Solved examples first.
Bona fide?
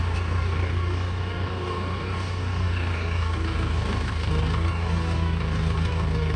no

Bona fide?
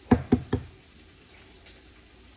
yes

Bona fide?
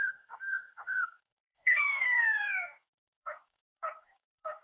no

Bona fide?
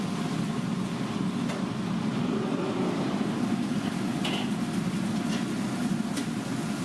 yes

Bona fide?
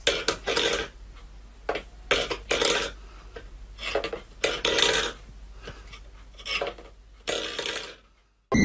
yes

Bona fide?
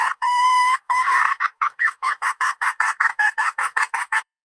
no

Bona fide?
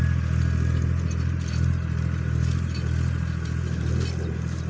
yes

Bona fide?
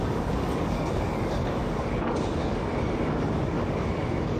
no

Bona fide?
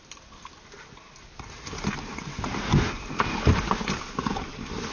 yes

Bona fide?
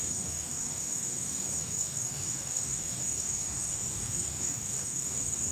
no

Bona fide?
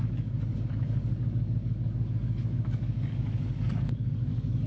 no